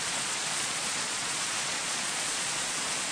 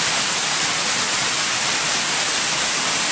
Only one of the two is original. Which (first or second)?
second